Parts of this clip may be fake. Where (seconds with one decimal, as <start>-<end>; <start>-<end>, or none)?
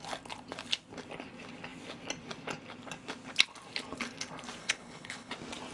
4.6-5.3